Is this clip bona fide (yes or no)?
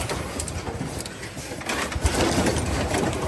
yes